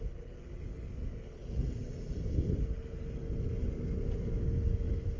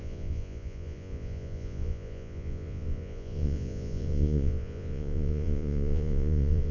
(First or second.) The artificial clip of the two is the second